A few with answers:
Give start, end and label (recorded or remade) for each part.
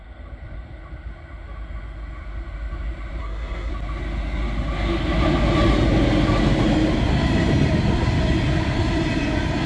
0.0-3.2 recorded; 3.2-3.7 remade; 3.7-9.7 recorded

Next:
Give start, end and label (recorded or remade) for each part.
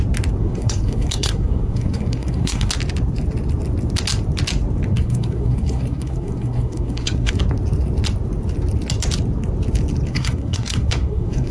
0.0-0.4 recorded; 0.4-2.7 remade; 2.7-4.9 recorded; 4.9-7.3 remade; 7.3-10.1 recorded; 10.1-11.5 remade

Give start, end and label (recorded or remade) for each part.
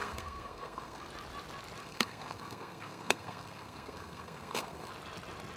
0.0-1.1 remade; 1.1-1.8 recorded; 1.8-4.9 remade; 4.9-5.6 recorded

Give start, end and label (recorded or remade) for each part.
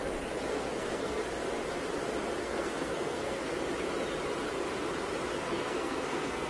0.0-0.5 recorded; 0.5-1.2 remade; 1.2-2.4 recorded; 2.4-3.5 remade; 3.5-5.3 recorded; 5.3-6.5 remade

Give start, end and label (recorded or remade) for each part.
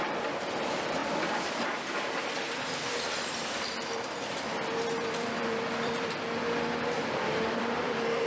0.0-8.3 remade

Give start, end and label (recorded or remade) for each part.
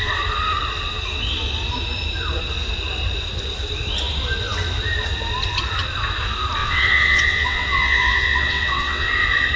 0.0-6.6 recorded; 6.6-9.1 remade; 9.1-9.6 recorded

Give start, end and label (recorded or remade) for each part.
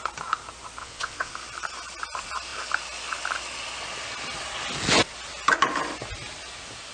0.0-0.8 recorded; 0.8-1.3 remade; 1.3-6.9 recorded